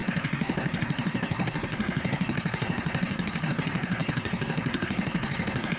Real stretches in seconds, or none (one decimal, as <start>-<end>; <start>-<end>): none